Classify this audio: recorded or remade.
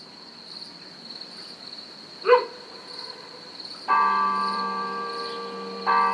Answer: remade